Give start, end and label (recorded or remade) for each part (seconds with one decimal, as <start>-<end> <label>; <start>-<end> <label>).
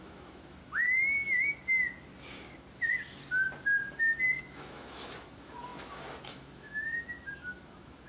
0.0-0.6 remade; 0.6-4.4 recorded; 4.4-8.1 remade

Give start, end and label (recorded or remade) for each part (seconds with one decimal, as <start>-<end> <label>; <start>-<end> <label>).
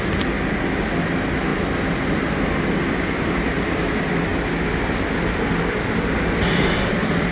0.0-7.3 recorded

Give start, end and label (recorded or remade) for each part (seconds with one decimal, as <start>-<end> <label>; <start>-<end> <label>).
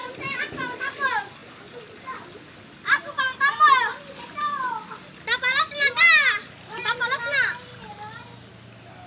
0.0-9.1 recorded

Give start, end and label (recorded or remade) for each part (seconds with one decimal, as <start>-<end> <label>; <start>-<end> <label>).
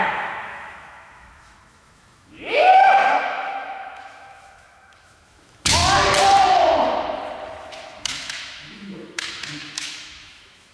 0.0-2.7 remade; 2.7-3.3 recorded; 3.3-5.8 remade; 5.8-7.6 recorded; 7.6-10.7 remade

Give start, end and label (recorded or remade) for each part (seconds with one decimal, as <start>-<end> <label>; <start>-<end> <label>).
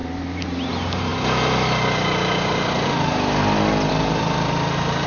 0.0-0.7 remade; 0.7-5.1 recorded